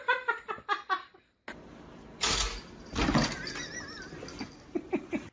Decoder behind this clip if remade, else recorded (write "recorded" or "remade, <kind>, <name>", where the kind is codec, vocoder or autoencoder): recorded